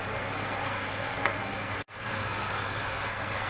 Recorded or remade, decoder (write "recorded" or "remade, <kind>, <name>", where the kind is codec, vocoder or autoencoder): remade, codec, SNAC